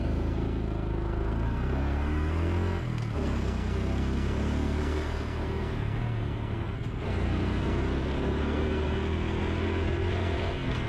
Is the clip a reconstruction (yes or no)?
yes